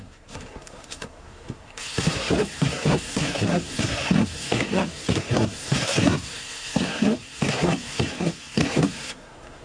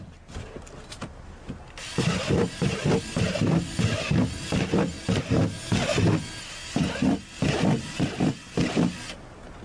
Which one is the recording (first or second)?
second